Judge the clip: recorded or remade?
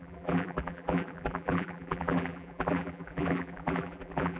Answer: remade